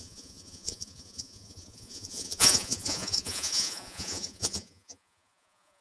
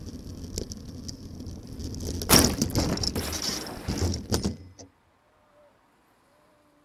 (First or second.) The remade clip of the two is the first